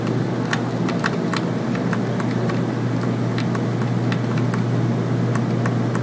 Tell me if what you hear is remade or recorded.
recorded